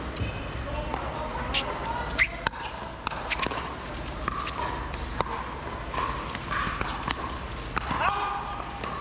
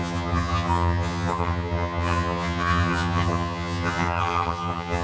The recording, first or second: first